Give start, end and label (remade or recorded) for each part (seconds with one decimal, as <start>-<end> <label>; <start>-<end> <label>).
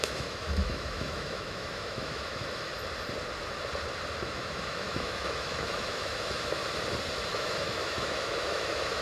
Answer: 0.0-2.7 remade; 2.7-4.2 recorded; 4.2-6.6 remade; 6.6-7.3 recorded; 7.3-9.0 remade